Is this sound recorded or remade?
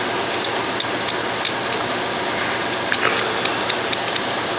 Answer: recorded